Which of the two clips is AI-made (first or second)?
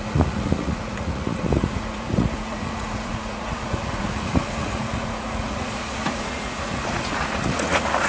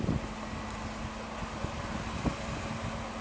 first